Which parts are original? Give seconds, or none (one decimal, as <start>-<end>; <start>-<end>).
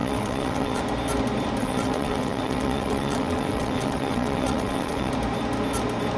0.8-1.6; 5.1-6.2